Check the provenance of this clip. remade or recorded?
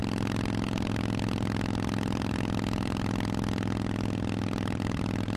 recorded